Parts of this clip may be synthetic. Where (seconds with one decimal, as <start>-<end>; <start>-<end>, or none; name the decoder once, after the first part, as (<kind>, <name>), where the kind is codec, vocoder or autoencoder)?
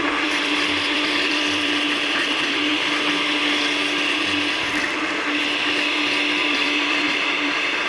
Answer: 0.0-2.7 (vocoder, BigVGAN v2); 6.4-7.9